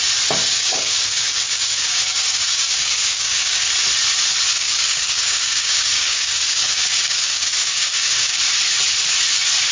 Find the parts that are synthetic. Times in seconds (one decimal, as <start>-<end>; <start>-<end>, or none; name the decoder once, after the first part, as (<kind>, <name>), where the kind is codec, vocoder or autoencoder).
0.4-3.7 (codec, DAC); 4.5-8.4